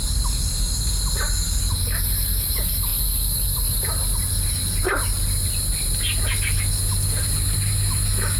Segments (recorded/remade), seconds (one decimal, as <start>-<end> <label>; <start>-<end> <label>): 0.0-8.4 recorded